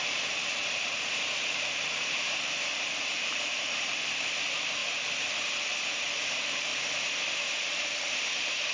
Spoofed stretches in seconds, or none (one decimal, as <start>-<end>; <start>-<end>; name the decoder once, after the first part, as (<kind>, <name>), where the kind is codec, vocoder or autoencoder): 0.0-4.8 (vocoder, BigVGAN v2); 6.3-6.7; 7.3-8.7